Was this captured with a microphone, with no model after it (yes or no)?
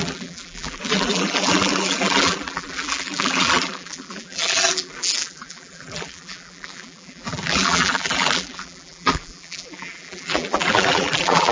no